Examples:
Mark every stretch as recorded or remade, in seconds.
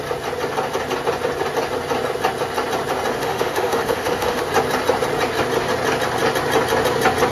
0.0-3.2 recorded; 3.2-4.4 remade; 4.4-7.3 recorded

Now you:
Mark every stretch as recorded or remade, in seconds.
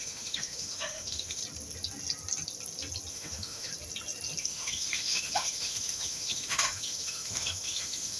0.0-1.4 remade; 1.4-3.1 recorded; 3.1-3.7 remade; 3.7-4.4 recorded; 4.4-8.2 remade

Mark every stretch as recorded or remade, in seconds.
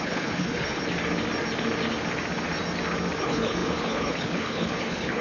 0.0-0.8 remade; 0.8-3.2 recorded; 3.2-5.2 remade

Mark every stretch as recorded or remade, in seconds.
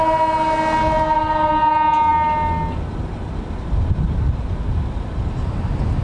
0.0-6.0 recorded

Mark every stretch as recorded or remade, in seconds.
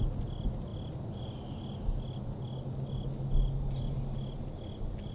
0.0-5.1 recorded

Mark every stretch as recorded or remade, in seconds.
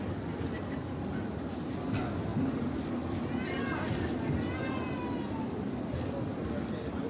0.0-7.1 recorded